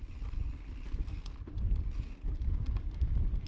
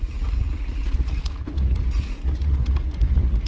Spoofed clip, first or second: second